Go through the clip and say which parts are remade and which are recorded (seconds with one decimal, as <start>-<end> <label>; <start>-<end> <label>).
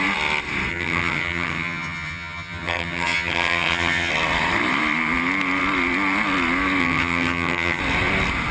0.0-0.7 recorded; 0.7-4.1 remade; 4.1-6.8 recorded; 6.8-7.8 remade; 7.8-8.5 recorded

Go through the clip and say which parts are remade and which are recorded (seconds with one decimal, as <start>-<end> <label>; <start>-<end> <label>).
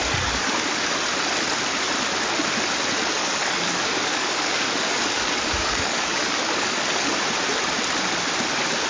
0.0-0.9 remade; 0.9-3.2 recorded; 3.2-7.1 remade; 7.1-8.9 recorded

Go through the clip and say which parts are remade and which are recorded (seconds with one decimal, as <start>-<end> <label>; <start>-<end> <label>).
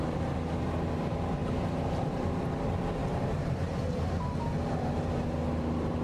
0.0-1.4 recorded; 1.4-2.3 remade; 2.3-3.0 recorded; 3.0-4.5 remade; 4.5-6.0 recorded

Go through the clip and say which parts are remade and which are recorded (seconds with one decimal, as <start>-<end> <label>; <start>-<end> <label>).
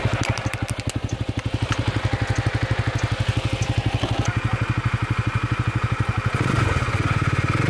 0.0-7.7 recorded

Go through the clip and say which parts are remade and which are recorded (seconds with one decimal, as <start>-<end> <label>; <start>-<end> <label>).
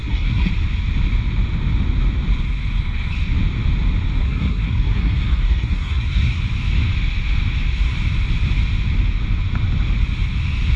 0.0-0.5 remade; 0.5-4.2 recorded; 4.2-6.4 remade; 6.4-10.8 recorded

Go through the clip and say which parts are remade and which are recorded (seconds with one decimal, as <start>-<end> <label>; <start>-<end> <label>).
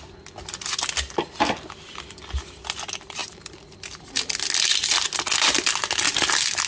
0.0-6.7 recorded